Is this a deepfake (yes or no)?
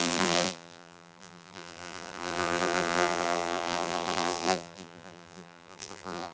yes